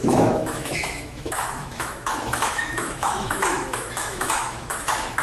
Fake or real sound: fake